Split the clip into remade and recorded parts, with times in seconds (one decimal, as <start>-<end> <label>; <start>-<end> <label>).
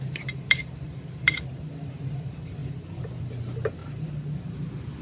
0.0-5.0 remade